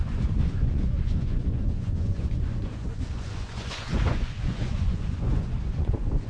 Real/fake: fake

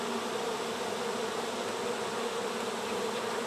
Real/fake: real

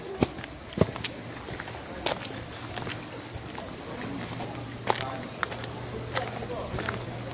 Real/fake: real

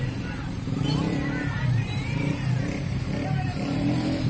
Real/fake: fake